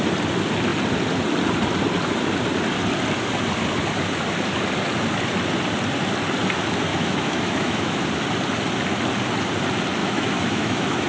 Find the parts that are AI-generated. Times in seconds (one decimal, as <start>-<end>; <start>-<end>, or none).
6.9-8.0; 10.0-11.1